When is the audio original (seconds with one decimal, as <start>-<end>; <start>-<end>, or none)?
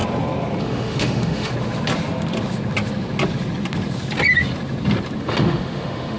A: 0.0-0.6; 1.5-5.2